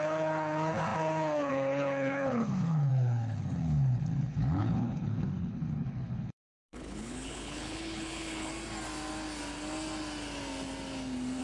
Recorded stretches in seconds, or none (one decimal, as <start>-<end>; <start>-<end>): 8.5-11.4